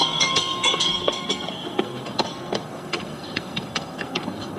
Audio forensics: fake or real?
fake